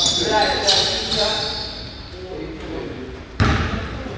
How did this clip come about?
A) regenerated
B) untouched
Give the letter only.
B